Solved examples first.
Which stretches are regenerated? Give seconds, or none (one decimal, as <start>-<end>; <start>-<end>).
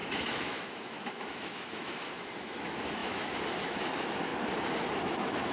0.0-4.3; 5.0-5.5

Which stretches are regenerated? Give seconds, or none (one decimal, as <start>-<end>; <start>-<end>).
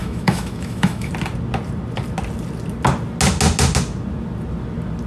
0.0-1.1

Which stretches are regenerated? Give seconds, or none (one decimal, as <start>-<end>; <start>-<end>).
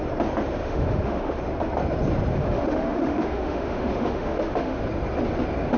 0.6-1.4; 2.3-4.8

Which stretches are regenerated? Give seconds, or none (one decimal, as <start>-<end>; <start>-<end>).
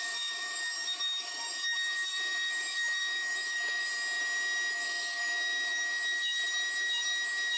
0.0-3.9; 4.7-6.4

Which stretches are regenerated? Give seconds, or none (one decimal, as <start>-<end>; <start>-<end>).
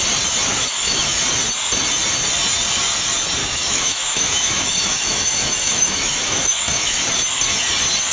0.5-1.2; 3.4-7.0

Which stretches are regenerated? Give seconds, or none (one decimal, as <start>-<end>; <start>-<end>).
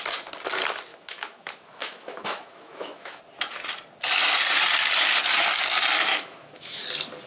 0.9-3.2; 6.1-6.8